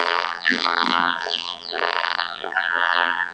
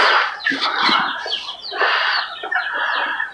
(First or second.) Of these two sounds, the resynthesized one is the first